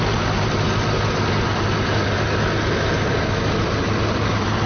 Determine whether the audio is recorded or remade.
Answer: recorded